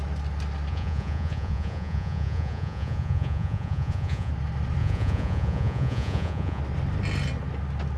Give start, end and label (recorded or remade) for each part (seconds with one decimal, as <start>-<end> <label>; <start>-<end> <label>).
0.0-0.7 recorded; 0.7-4.3 remade; 4.3-4.8 recorded; 4.8-6.6 remade; 6.6-8.0 recorded